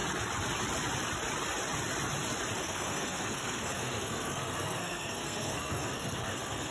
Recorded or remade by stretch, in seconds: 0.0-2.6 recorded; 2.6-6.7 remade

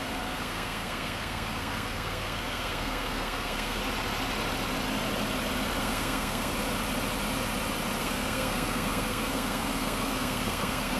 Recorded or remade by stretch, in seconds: 0.0-3.8 remade; 3.8-5.8 recorded; 5.8-6.5 remade; 6.5-8.0 recorded; 8.0-11.0 remade

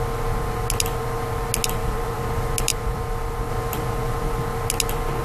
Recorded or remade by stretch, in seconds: 0.0-5.2 recorded